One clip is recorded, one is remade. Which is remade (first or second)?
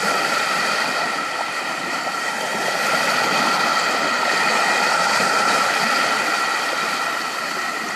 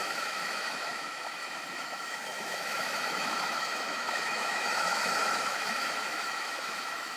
second